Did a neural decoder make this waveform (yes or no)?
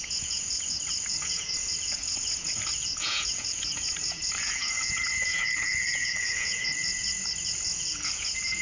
yes